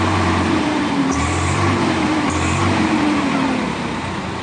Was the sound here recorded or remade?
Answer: remade